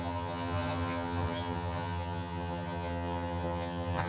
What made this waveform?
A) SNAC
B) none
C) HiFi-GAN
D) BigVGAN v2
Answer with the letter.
C